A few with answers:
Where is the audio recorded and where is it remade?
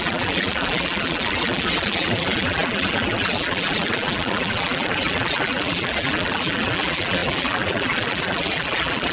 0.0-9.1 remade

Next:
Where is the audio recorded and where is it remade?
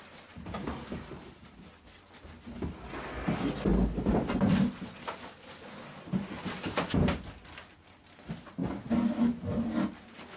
0.0-3.7 recorded; 3.7-8.0 remade; 8.0-10.4 recorded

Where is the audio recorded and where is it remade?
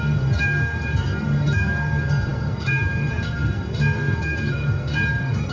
0.0-5.5 remade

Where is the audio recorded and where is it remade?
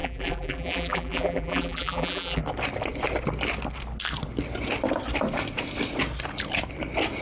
0.0-2.4 remade; 2.4-7.2 recorded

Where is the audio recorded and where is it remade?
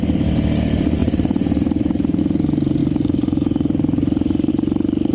0.0-1.0 recorded; 1.0-2.2 remade; 2.2-2.8 recorded; 2.8-4.5 remade; 4.5-5.1 recorded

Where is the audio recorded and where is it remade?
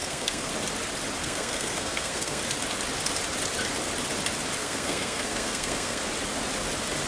0.0-0.5 remade; 0.5-1.2 recorded; 1.2-2.4 remade; 2.4-4.6 recorded; 4.6-6.0 remade; 6.0-7.1 recorded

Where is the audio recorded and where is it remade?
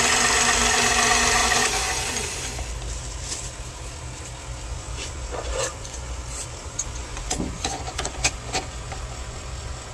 0.0-1.4 recorded; 1.4-2.5 remade; 2.5-4.7 recorded; 4.7-9.9 remade